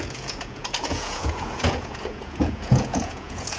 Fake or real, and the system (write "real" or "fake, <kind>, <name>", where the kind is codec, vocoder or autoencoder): fake, vocoder, Vocos